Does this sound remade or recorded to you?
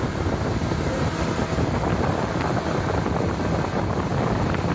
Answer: recorded